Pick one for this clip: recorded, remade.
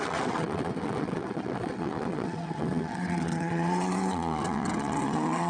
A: remade